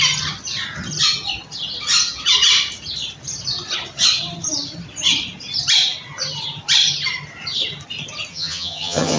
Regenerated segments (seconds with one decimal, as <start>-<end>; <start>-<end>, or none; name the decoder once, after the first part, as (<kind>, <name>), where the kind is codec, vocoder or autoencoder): 8.3-9.2 (vocoder, HiFi-GAN)